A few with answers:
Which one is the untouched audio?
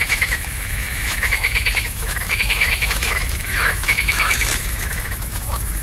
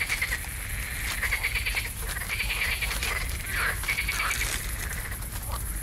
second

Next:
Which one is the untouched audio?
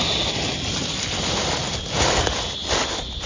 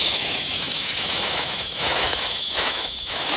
first